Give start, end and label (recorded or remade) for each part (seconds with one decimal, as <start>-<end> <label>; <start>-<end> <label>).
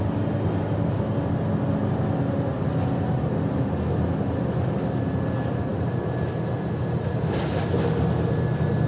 0.0-8.9 recorded